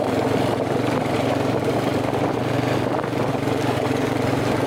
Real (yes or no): yes